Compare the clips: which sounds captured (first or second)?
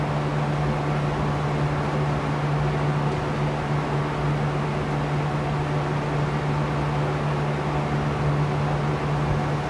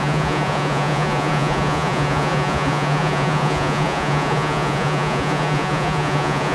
first